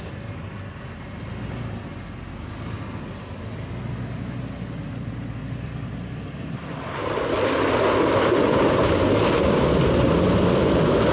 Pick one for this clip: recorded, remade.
recorded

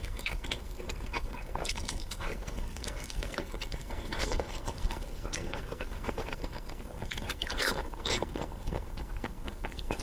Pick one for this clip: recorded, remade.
remade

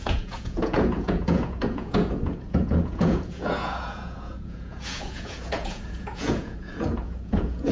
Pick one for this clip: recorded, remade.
remade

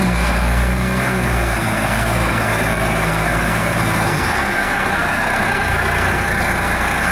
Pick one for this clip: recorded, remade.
remade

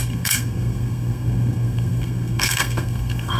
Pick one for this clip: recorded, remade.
remade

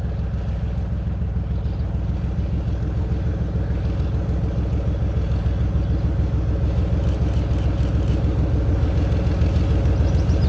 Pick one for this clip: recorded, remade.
recorded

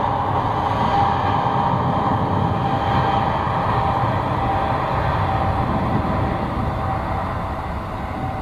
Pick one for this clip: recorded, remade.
recorded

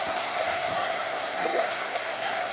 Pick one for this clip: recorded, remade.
remade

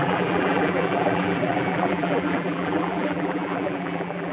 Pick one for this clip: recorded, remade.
remade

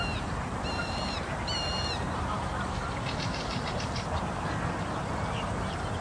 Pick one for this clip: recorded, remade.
remade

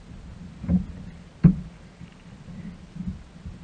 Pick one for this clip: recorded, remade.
recorded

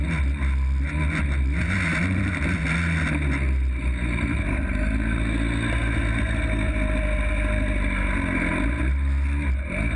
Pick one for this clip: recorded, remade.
recorded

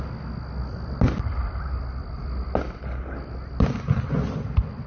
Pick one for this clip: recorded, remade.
recorded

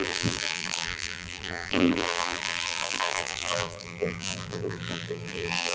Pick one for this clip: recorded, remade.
remade